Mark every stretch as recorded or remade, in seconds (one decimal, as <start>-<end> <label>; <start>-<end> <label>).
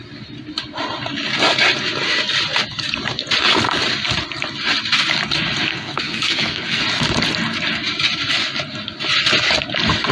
0.0-5.7 recorded; 5.7-6.8 remade; 6.8-10.1 recorded